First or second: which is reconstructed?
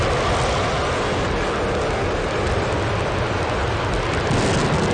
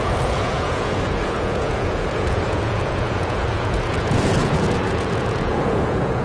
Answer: second